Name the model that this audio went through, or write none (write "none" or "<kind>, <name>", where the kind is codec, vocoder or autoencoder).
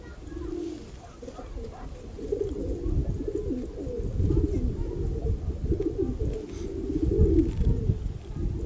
none